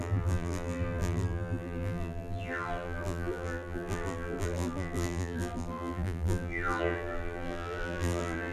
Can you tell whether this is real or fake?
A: fake